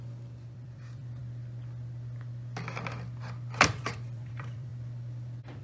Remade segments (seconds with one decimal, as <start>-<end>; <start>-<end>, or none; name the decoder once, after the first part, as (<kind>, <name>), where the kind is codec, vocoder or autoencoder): 0.0-1.2 (vocoder, BigVGAN v2); 3.7-5.6